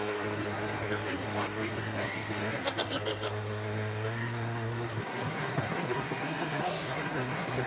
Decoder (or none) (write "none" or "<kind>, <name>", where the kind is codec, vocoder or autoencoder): codec, SNAC